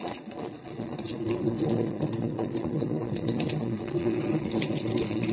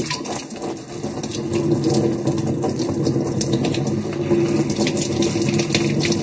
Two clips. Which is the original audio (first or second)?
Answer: second